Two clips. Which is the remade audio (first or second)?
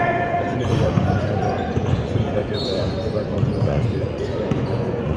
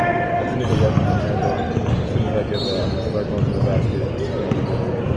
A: first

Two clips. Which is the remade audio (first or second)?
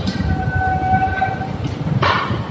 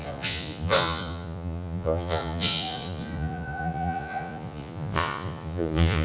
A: second